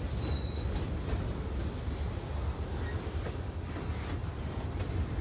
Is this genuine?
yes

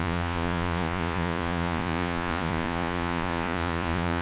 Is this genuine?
no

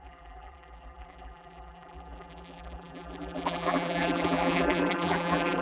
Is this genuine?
no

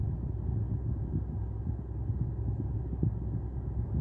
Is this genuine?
yes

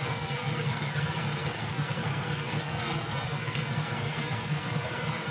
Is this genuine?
no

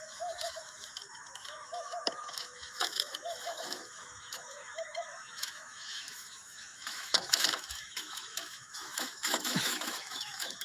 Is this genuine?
no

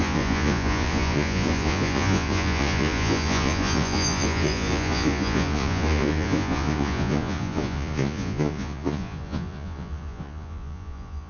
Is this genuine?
no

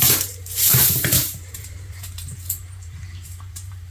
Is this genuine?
no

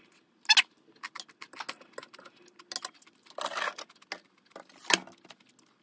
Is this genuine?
yes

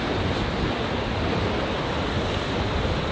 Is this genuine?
yes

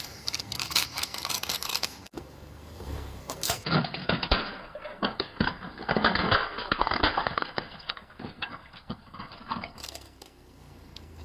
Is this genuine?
no